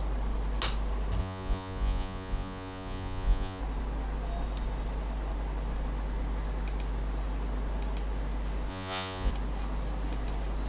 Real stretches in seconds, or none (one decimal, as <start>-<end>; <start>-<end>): 0.0-1.2; 3.6-8.7; 9.3-10.7